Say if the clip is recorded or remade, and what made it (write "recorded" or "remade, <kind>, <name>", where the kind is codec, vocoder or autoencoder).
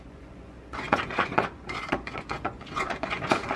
remade, vocoder, Vocos